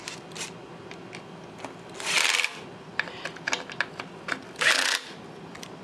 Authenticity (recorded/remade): recorded